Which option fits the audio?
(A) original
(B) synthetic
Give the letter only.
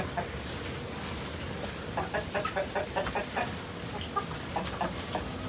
A